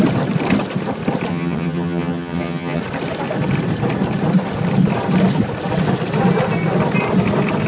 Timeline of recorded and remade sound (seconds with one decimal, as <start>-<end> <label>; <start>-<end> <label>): 0.0-1.3 recorded; 1.3-2.8 remade; 2.8-7.7 recorded